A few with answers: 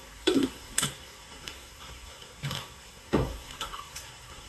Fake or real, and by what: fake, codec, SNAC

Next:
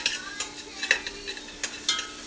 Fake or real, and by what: real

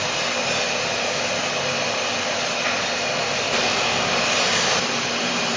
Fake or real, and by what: real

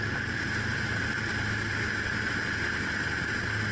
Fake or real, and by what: real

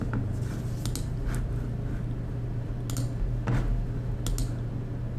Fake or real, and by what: real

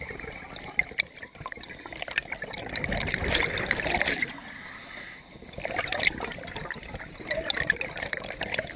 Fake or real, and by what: fake, vocoder, BigVGAN v2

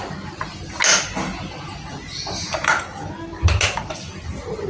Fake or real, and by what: real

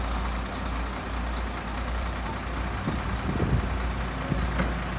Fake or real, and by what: real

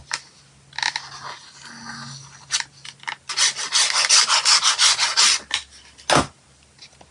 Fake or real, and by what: real